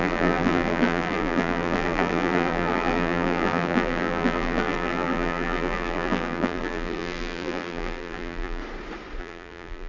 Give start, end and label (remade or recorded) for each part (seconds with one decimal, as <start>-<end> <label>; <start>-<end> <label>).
0.0-8.6 remade; 8.6-9.2 recorded; 9.2-9.9 remade